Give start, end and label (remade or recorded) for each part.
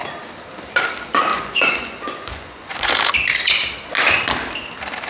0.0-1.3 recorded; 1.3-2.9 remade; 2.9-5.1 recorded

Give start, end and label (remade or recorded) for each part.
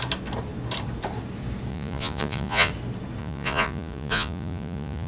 0.0-1.7 recorded; 1.7-2.7 remade; 2.7-3.2 recorded; 3.2-5.1 remade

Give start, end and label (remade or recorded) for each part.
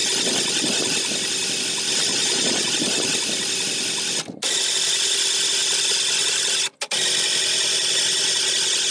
0.0-2.1 recorded; 2.1-2.7 remade; 2.7-8.9 recorded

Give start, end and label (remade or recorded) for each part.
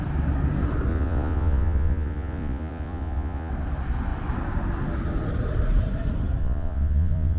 0.0-0.9 recorded; 0.9-3.5 remade; 3.5-6.4 recorded; 6.4-7.4 remade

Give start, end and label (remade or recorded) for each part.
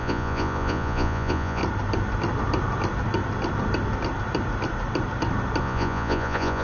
0.0-1.6 remade; 1.6-5.6 recorded; 5.6-6.6 remade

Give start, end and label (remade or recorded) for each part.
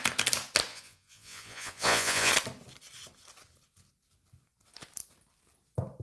0.0-0.7 recorded; 0.7-2.3 remade; 2.3-6.0 recorded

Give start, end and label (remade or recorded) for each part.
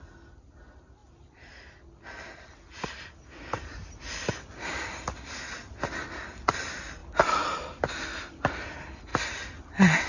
0.0-10.1 recorded